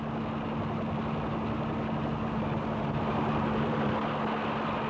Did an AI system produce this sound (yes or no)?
no